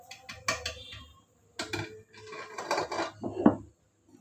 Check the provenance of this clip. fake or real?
real